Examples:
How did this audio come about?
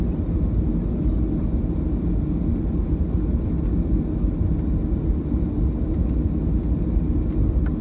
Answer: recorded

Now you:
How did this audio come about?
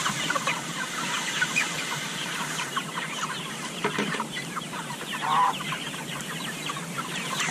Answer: remade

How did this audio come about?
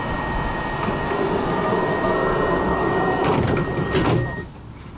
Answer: recorded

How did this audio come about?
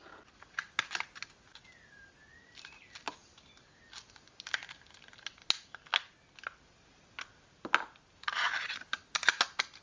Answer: recorded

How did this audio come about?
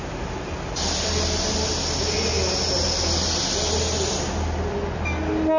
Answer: recorded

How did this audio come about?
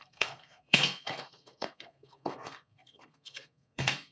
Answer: remade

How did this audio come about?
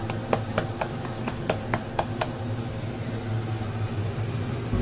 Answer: recorded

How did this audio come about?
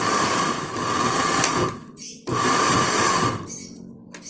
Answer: recorded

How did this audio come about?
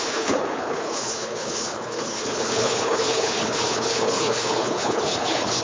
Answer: remade